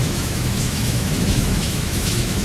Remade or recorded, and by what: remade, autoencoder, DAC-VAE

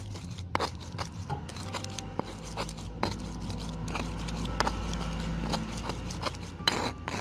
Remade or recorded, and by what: recorded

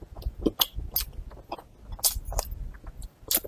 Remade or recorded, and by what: recorded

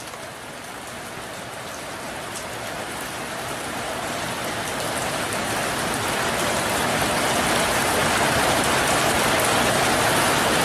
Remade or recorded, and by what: recorded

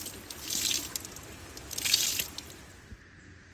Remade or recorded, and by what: recorded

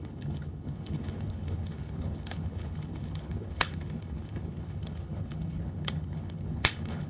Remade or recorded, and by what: remade, codec, HILCodec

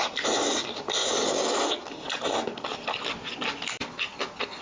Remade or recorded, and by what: remade, vocoder, BigVGAN v2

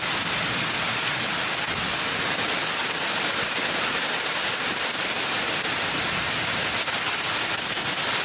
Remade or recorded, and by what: recorded